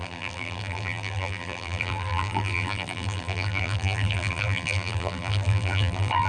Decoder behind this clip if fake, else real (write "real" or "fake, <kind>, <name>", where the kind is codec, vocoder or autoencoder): fake, vocoder, BigVGAN v2